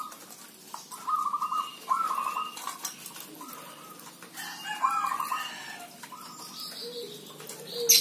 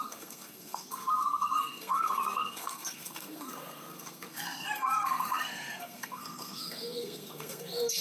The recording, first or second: first